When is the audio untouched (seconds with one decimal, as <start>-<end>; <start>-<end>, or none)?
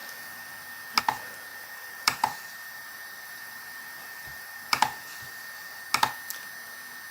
0.0-1.5; 5.8-7.1